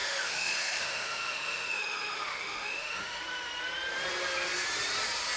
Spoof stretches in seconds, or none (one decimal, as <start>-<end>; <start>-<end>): 0.0-3.2